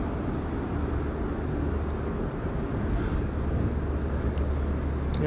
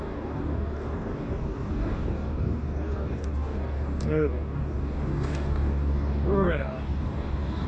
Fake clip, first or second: second